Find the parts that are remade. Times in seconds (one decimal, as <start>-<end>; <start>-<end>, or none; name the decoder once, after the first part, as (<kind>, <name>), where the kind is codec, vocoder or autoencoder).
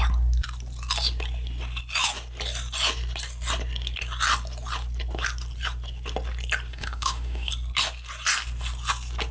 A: 6.7-7.5 (autoencoder, DAC-VAE)